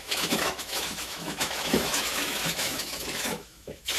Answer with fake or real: fake